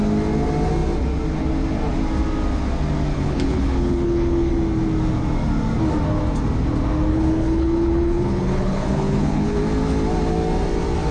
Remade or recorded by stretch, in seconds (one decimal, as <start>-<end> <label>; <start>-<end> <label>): 0.0-3.1 recorded; 3.1-4.5 remade; 4.5-7.1 recorded; 7.1-9.6 remade; 9.6-11.1 recorded

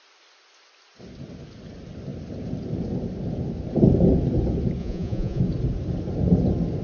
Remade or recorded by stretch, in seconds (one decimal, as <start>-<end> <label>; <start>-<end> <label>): 0.0-4.8 recorded; 4.8-5.4 remade; 5.4-6.8 recorded

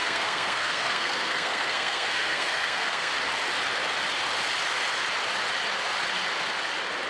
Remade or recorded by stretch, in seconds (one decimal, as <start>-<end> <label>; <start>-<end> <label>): 0.0-3.1 remade; 3.1-7.1 recorded

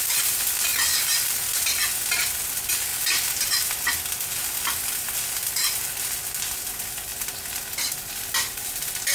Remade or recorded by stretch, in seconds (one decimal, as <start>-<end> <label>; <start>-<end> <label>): 0.0-9.1 recorded

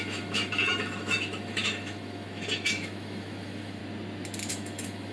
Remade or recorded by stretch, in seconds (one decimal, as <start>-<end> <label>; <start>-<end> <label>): 0.0-3.8 remade; 3.8-4.5 recorded; 4.5-5.1 remade

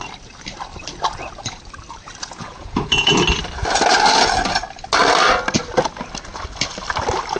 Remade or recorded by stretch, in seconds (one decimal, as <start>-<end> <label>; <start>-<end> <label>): 0.0-2.2 recorded; 2.2-3.1 remade; 3.1-7.4 recorded

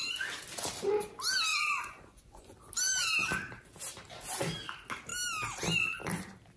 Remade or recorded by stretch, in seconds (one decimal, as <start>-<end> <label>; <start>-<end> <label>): 0.0-1.5 recorded; 1.5-2.6 remade; 2.6-6.6 recorded